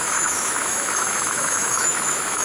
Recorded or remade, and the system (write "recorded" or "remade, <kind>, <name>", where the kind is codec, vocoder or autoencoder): remade, autoencoder, DAC-VAE